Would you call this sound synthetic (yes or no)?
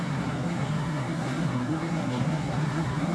yes